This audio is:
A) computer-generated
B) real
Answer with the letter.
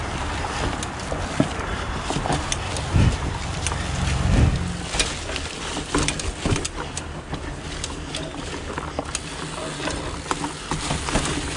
B